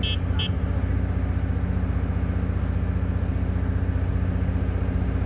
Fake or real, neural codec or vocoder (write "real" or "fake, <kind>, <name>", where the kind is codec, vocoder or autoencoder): real